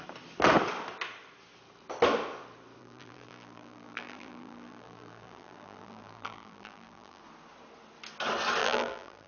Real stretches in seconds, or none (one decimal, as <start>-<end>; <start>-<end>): 0.0-2.8; 7.2-8.6